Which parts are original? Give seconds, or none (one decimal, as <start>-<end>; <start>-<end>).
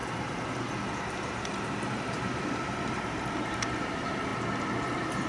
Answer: 3.2-5.3